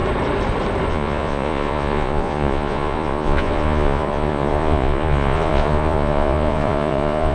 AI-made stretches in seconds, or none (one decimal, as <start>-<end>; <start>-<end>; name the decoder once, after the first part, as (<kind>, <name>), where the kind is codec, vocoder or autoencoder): 0.9-7.3 (vocoder, Vocos)